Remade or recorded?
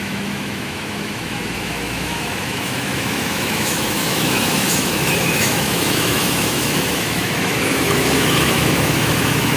remade